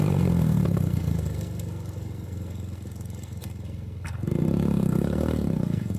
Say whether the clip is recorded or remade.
remade